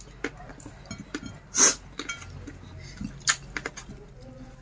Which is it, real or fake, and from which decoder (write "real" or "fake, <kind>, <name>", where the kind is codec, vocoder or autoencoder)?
real